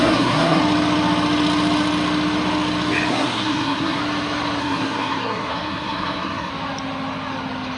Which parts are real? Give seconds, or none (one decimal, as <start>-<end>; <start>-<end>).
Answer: 0.6-3.1; 4.0-4.6; 6.5-7.8